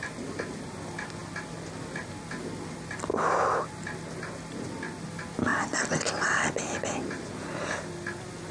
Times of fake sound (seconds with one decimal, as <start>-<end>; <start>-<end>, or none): none

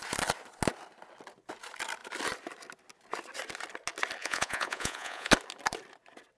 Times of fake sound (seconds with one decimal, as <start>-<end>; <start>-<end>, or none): 4.2-5.3

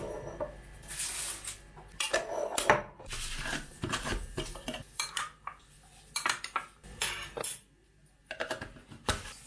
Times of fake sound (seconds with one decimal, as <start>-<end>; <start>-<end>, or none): none

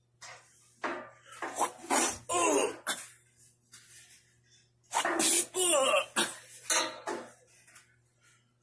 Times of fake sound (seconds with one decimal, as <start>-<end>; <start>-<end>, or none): none

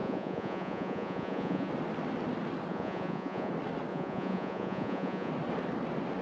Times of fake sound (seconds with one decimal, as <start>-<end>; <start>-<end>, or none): 0.0-1.7; 2.7-3.5; 3.9-5.3

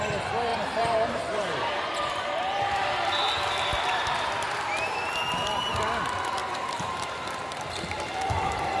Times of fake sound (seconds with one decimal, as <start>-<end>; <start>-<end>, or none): 0.5-3.3; 3.7-4.3; 6.4-8.2

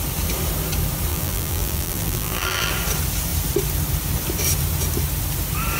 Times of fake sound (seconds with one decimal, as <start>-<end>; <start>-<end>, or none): 1.1-2.7